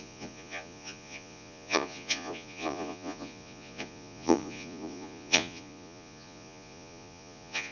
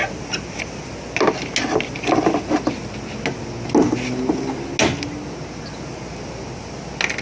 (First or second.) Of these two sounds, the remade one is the first